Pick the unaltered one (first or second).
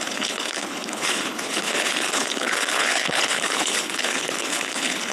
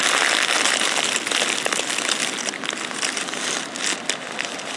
second